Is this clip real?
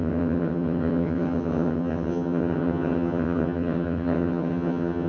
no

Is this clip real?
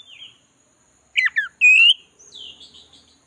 yes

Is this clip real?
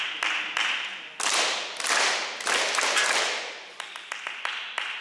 yes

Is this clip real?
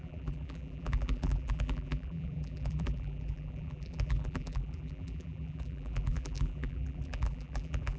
no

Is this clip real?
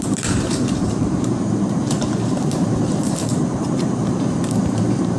no